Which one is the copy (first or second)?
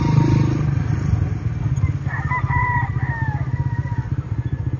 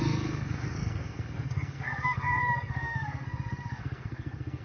second